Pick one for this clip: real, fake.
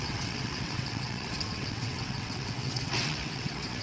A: fake